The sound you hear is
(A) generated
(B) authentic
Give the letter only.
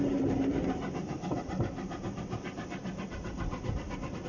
B